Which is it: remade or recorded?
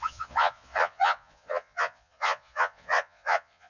remade